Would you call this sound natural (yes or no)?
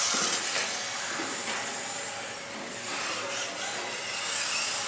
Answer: yes